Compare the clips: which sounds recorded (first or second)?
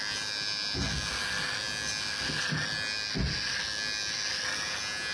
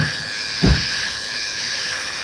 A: first